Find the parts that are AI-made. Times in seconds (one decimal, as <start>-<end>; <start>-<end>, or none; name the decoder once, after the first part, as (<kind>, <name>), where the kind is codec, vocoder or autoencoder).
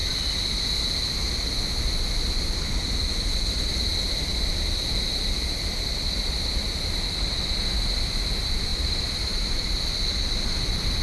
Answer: 8.7-9.8 (vocoder, BigVGAN v2)